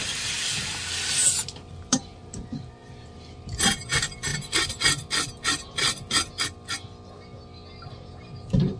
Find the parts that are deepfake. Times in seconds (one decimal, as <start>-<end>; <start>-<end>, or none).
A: 0.0-4.3; 7.9-8.8